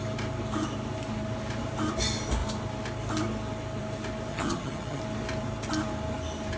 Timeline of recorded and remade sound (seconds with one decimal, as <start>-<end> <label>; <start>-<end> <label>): 0.0-4.3 recorded; 4.3-5.0 remade; 5.0-6.6 recorded